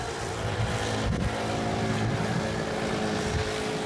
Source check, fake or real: real